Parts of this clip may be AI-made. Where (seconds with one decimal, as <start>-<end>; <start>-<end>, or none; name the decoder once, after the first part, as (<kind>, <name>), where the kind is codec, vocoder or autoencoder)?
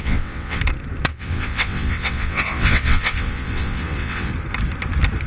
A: 0.0-0.6 (vocoder, WaveNeXt); 1.1-4.3